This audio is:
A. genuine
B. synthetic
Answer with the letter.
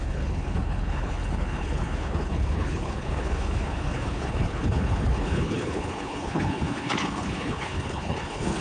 B